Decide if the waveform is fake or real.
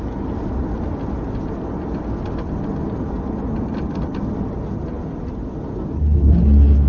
real